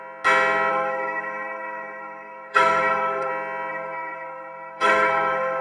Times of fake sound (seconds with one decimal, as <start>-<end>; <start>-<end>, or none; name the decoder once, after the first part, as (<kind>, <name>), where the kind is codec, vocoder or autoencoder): 0.7-3.3 (codec, SNAC); 3.7-5.6